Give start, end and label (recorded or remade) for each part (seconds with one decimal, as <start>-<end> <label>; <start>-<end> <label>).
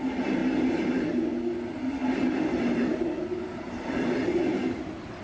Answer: 0.0-5.2 recorded